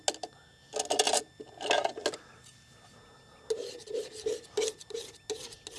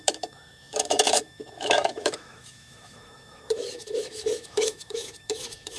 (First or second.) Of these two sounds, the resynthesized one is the second